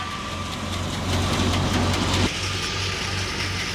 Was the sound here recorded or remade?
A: recorded